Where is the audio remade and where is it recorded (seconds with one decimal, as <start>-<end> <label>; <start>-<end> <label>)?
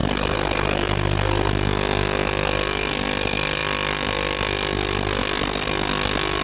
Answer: 0.0-1.5 remade; 1.5-6.4 recorded